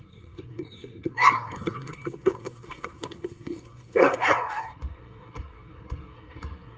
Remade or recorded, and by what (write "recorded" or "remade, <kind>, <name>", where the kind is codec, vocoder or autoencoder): remade, codec, SNAC